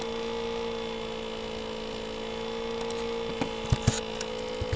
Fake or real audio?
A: real